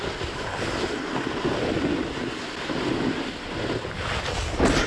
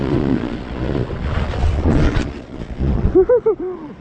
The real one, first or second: first